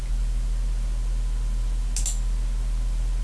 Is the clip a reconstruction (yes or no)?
no